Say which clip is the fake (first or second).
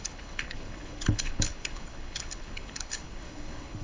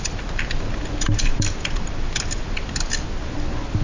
first